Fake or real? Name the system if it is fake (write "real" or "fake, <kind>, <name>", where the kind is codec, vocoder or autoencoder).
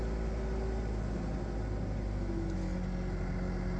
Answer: real